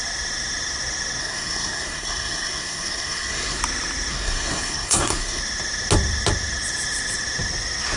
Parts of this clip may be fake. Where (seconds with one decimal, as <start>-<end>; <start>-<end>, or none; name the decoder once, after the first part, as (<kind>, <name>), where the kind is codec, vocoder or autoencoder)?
1.2-3.6 (codec, SNAC); 4.1-5.4